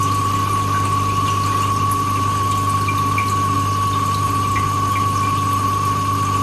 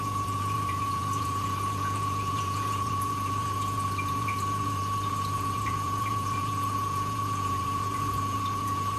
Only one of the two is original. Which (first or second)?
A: first